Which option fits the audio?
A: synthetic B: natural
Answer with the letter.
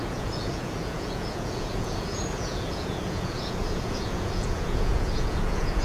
A